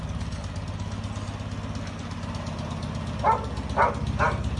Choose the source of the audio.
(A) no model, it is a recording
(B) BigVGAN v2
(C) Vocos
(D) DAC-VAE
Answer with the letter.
A